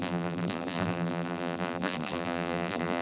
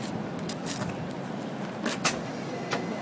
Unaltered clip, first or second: second